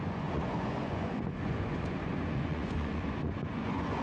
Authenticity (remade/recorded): remade